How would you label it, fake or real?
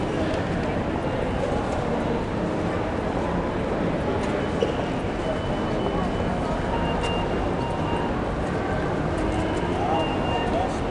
real